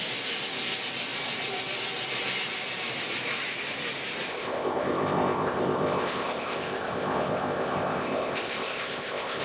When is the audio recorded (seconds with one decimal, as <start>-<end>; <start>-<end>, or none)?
0.0-4.3